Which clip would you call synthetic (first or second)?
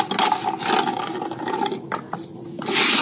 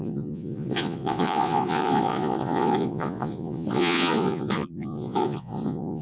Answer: second